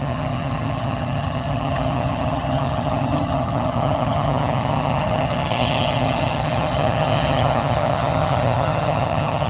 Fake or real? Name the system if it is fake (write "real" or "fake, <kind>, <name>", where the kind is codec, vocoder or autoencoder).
fake, vocoder, HiFi-GAN